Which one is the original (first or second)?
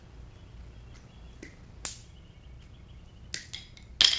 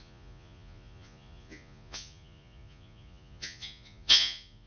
first